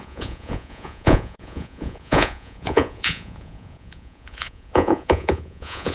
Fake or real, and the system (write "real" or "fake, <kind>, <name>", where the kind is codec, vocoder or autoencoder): fake, vocoder, Vocos